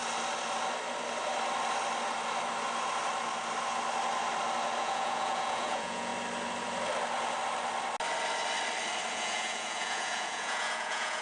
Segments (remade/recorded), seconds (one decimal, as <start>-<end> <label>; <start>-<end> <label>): 0.0-4.8 recorded; 4.8-6.1 remade; 6.1-9.1 recorded; 9.1-11.2 remade